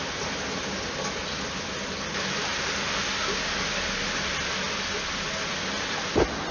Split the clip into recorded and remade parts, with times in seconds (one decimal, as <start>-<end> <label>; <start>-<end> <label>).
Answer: 0.0-6.5 recorded